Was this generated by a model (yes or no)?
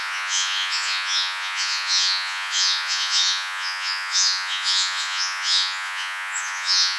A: yes